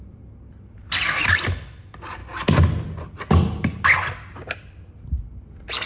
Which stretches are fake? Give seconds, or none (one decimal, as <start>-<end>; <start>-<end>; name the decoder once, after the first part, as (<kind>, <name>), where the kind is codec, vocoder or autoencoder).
none